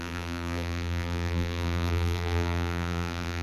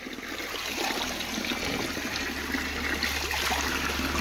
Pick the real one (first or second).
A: second